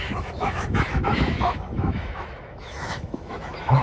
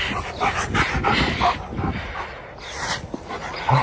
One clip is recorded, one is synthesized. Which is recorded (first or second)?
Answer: second